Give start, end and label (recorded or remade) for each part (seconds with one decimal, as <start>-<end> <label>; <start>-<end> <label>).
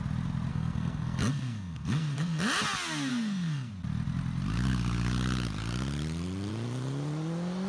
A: 0.0-0.5 recorded; 0.5-2.4 remade; 2.4-3.1 recorded; 3.1-3.7 remade; 3.7-7.7 recorded